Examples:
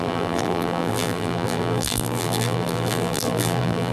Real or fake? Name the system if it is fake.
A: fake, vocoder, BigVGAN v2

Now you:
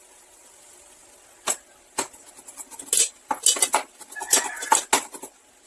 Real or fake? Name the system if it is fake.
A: real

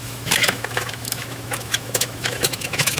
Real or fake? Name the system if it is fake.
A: fake, autoencoder, DAC-VAE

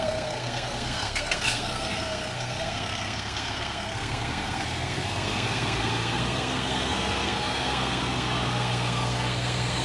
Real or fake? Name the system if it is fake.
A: fake, codec, SNAC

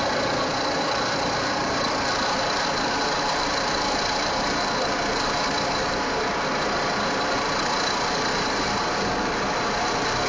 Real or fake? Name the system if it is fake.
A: real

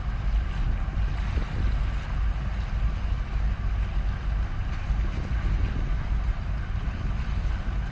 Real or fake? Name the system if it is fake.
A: real